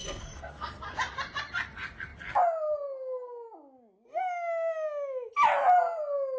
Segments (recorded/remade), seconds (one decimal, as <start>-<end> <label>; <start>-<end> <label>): 0.0-0.8 remade; 0.8-6.4 recorded